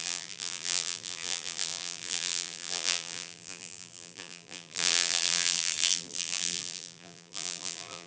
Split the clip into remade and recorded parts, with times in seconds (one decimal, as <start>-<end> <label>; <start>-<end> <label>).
0.0-8.1 remade